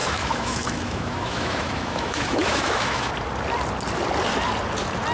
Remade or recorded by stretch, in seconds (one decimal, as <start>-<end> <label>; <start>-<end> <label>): 0.0-3.1 remade; 3.1-5.1 recorded